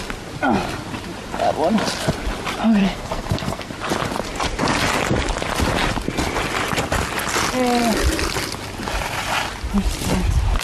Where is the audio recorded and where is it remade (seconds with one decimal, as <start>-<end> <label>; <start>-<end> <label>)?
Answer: 0.0-2.8 recorded; 2.8-3.7 remade; 3.7-10.6 recorded